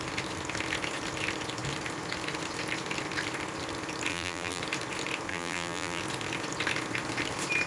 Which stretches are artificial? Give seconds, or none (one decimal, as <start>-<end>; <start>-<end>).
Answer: 4.1-4.6; 5.3-6.0

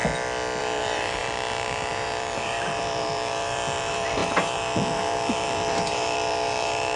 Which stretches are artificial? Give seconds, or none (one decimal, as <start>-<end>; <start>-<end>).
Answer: 0.6-7.0

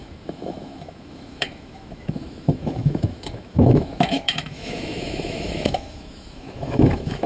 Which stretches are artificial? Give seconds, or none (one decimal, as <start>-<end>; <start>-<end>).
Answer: 0.0-7.3

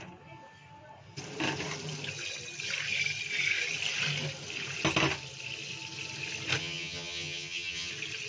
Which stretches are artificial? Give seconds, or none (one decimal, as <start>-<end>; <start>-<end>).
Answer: 6.6-7.9

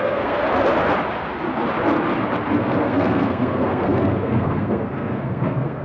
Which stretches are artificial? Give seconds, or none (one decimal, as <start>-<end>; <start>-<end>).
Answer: 0.0-0.4; 2.6-5.8

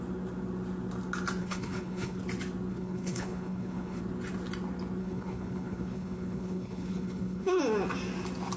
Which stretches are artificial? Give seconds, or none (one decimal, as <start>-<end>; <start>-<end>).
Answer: 1.4-2.2; 2.7-4.0; 5.0-7.6

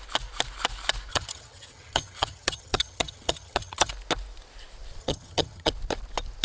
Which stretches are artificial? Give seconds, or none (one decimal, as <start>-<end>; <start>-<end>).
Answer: 1.1-3.9; 5.0-5.7